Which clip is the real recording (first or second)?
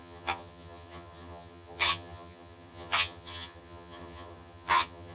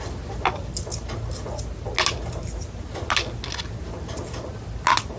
second